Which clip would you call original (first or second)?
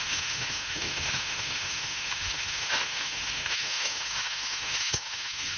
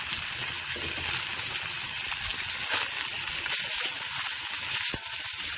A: second